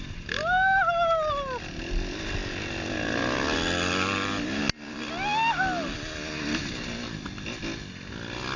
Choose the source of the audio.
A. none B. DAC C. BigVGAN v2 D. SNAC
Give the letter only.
A